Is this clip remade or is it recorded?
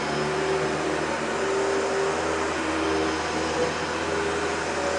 recorded